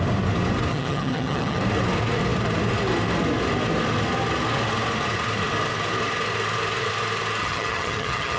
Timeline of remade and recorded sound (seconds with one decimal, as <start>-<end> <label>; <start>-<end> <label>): 0.0-0.7 recorded; 0.7-1.6 remade; 1.6-7.4 recorded; 7.4-8.4 remade